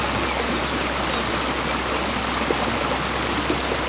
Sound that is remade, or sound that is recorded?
recorded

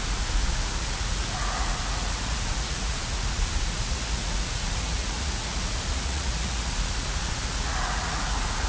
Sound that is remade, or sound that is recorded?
remade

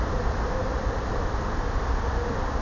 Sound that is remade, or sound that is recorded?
recorded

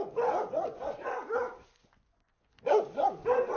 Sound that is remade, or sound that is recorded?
remade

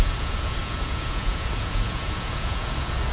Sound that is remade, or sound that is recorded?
remade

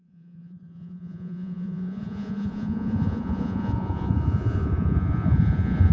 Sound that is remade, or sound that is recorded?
remade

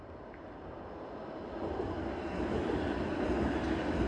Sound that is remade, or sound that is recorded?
recorded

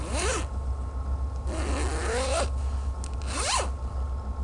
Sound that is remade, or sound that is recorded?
recorded